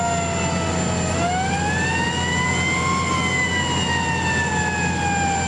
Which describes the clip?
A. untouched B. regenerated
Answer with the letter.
A